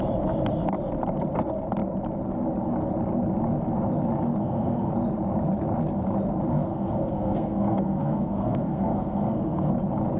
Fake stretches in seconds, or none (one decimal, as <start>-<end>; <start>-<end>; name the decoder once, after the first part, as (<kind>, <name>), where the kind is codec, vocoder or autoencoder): 4.4-4.9 (codec, SNAC); 6.5-9.7